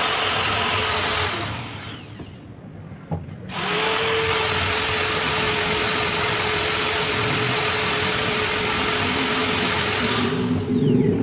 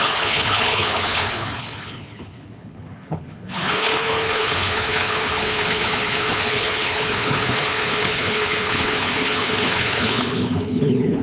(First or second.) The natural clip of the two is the first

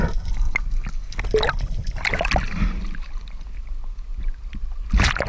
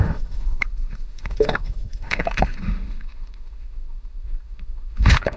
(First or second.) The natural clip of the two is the first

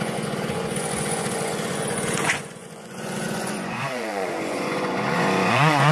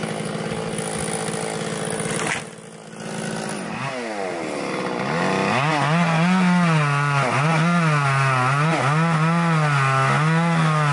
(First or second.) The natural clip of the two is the second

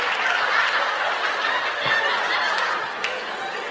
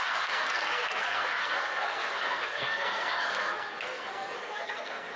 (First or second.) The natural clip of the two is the first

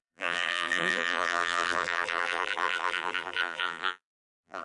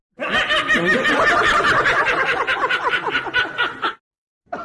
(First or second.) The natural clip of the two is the second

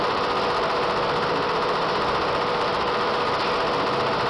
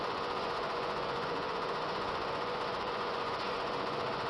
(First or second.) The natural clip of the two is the first